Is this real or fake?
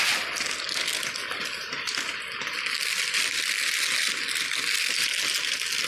real